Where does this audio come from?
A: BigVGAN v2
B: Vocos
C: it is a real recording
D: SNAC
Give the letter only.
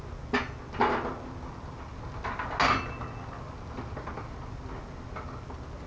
C